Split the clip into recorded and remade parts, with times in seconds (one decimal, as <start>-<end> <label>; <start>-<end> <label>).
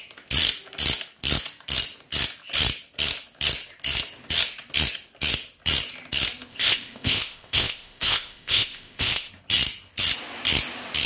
0.0-6.5 recorded; 6.5-9.3 remade; 9.3-11.1 recorded